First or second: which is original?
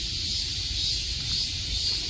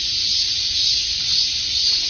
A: first